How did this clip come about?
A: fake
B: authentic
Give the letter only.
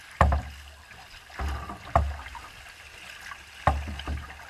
B